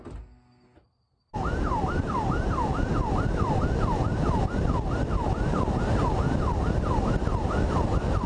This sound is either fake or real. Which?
real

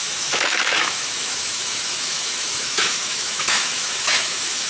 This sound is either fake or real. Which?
fake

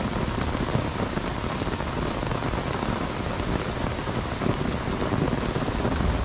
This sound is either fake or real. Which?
real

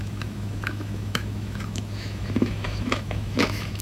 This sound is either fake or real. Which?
fake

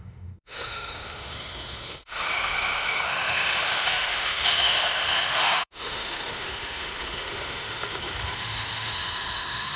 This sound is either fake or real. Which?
fake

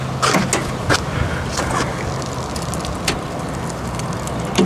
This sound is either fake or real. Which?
real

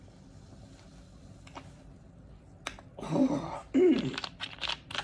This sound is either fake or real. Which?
real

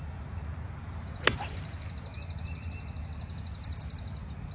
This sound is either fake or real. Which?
real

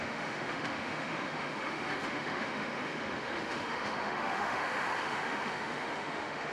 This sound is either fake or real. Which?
fake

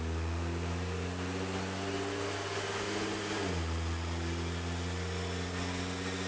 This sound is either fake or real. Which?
real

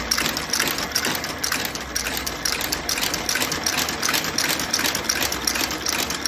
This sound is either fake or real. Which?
real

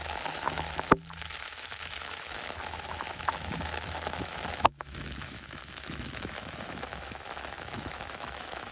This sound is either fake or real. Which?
fake